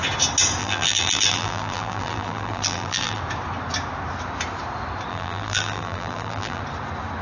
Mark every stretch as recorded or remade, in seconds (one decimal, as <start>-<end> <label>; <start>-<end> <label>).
0.0-0.6 recorded; 0.6-3.2 remade; 3.2-5.1 recorded; 5.1-6.6 remade; 6.6-7.2 recorded